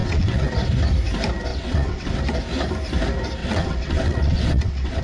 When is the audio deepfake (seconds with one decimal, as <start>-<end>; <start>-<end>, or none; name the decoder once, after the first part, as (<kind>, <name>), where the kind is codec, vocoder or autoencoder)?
0.0-0.5 (vocoder, WaveNeXt); 1.5-2.2; 3.4-5.0